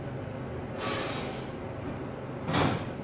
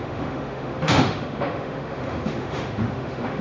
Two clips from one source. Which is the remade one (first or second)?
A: second